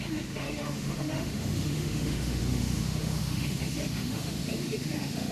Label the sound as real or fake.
fake